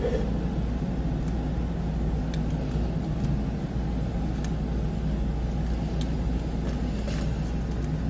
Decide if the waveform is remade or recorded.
recorded